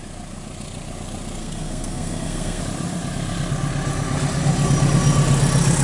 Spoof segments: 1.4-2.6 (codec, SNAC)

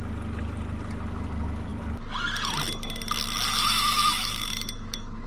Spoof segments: 3.6-5.3 (autoencoder, DAC-VAE)

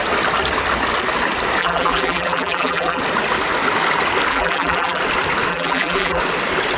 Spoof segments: 1.6-3.0 (vocoder, BigVGAN v2); 4.3-5.0; 5.5-6.2

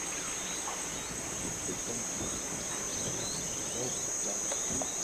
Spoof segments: 0.9-1.8 (vocoder, BigVGAN v2); 2.9-4.1

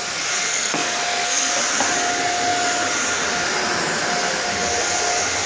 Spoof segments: 0.5-1.5 (codec, SNAC)

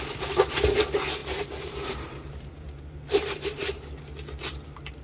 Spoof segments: 1.2-4.0 (vocoder, BigVGAN v2)